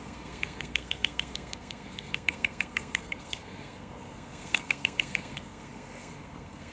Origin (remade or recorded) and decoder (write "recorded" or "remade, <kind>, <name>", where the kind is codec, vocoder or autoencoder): remade, codec, SNAC